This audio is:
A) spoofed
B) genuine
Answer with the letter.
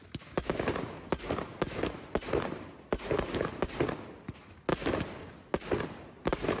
B